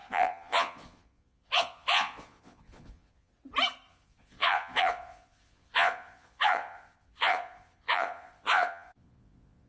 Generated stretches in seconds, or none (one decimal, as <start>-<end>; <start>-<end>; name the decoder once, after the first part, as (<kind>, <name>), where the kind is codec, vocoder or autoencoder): 0.0-3.3 (vocoder, Vocos); 3.9-9.7